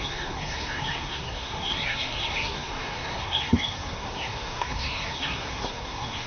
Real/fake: fake